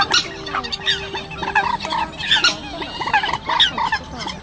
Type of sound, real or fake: real